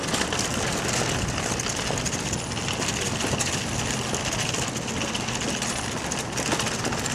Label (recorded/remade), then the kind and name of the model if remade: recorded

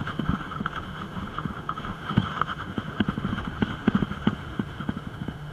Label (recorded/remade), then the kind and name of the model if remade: remade, autoencoder, DAC-VAE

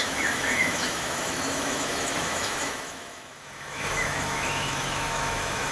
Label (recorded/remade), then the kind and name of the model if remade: remade, autoencoder, DAC-VAE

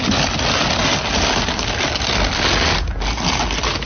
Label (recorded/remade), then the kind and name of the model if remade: recorded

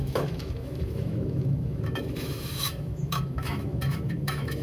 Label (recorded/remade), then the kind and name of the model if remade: remade, autoencoder, DAC-VAE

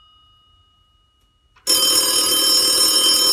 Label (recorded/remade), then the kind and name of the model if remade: recorded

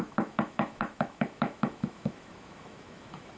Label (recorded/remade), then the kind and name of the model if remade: remade, autoencoder, DAC-VAE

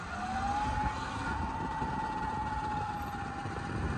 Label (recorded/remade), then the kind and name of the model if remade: recorded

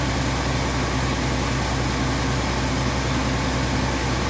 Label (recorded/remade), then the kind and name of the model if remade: recorded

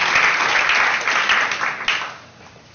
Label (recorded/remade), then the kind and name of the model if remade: recorded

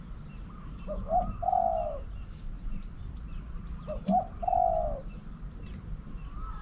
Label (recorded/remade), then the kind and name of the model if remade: recorded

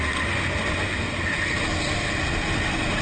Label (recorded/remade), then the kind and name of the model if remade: recorded